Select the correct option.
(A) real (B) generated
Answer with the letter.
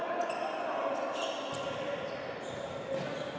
A